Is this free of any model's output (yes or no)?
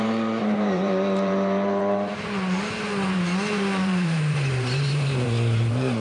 no